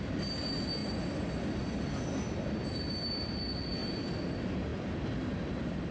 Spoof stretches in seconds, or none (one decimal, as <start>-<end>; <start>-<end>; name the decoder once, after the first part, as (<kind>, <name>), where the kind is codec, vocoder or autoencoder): 0.8-1.8 (vocoder, BigVGAN v2); 3.8-4.3